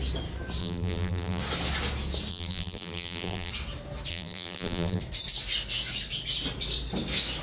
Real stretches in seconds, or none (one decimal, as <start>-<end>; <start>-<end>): 0.0-0.6; 1.4-2.3; 3.5-4.1; 5.0-7.4